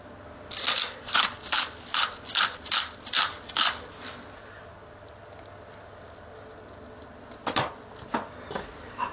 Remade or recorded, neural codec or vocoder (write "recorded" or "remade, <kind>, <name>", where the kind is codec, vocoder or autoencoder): recorded